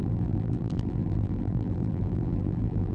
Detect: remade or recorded remade